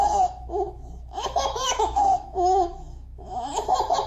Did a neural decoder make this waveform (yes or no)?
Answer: yes